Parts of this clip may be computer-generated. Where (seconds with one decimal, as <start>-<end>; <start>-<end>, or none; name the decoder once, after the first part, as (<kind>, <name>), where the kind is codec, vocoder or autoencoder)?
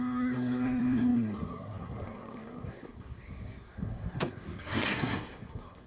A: 0.0-5.9 (codec, SNAC)